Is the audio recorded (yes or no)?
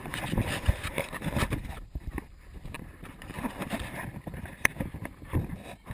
no